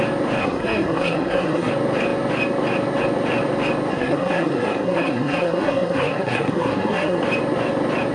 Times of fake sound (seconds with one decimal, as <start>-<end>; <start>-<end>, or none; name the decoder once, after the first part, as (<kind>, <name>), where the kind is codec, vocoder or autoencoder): 0.4-1.7 (codec, SNAC); 3.9-7.2